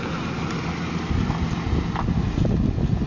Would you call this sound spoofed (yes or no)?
no